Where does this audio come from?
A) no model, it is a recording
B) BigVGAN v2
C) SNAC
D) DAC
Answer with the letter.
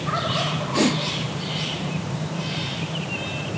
B